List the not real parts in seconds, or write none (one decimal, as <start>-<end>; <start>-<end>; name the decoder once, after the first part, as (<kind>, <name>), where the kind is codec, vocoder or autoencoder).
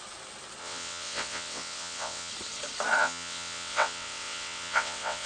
0.6-2.3 (vocoder, WaveNeXt); 3.0-5.3